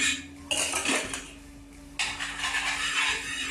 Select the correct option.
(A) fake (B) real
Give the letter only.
B